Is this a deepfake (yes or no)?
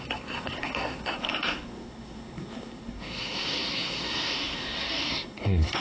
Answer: yes